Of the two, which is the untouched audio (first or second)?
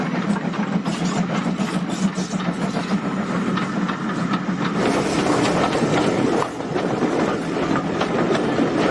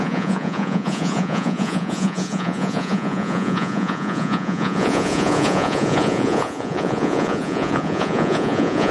first